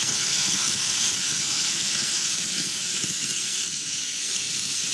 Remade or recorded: remade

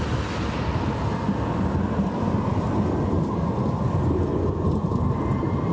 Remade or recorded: recorded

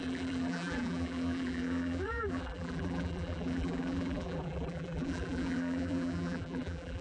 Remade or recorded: remade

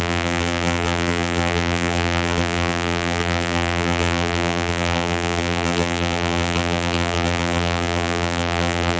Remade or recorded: remade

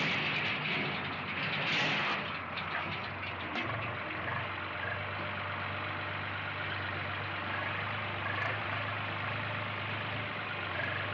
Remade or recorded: recorded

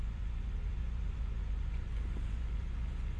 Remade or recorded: remade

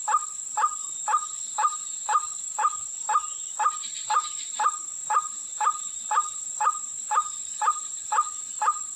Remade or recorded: remade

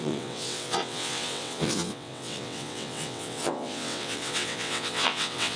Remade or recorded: remade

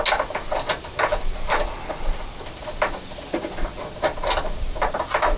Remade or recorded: recorded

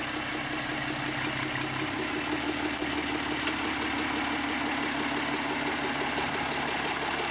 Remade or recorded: recorded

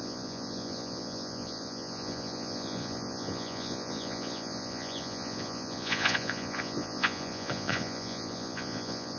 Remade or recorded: remade